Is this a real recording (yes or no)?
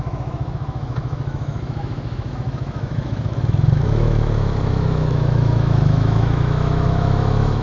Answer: no